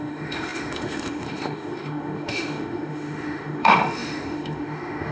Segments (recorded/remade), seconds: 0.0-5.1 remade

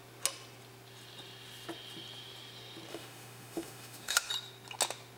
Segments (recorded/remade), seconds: 0.0-2.9 recorded; 2.9-4.3 remade; 4.3-5.2 recorded

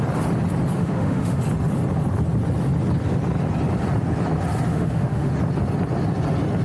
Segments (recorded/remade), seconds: 0.0-0.8 recorded; 0.8-1.4 remade; 1.4-4.7 recorded; 4.7-5.3 remade; 5.3-6.6 recorded